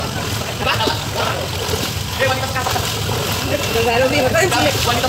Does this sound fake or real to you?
real